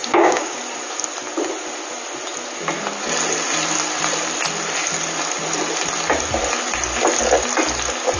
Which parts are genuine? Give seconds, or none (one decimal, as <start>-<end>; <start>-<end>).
0.6-8.2